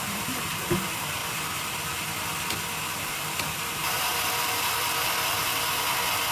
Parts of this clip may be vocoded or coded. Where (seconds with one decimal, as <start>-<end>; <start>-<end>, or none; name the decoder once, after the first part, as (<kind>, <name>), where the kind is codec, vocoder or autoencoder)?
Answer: 0.0-1.2 (vocoder, BigVGAN v2); 3.0-4.1